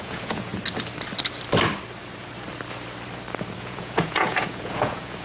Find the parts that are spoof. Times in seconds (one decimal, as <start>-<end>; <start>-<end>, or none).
0.0-0.5; 3.6-5.2